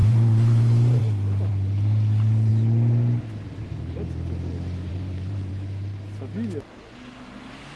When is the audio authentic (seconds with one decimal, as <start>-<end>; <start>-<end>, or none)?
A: 1.0-4.9; 5.5-7.8